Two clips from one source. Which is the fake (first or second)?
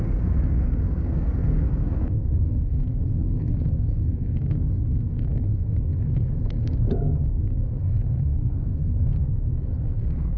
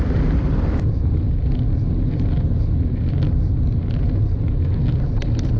first